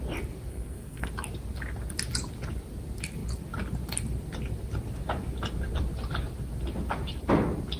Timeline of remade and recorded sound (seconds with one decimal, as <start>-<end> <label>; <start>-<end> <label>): 0.0-0.5 recorded; 0.5-1.1 remade; 1.1-7.8 recorded